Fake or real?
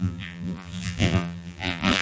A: fake